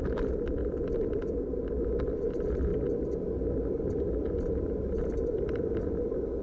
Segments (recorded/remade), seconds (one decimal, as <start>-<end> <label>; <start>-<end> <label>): 0.0-0.6 remade; 0.6-2.3 recorded; 2.3-2.7 remade; 2.7-4.5 recorded; 4.5-6.4 remade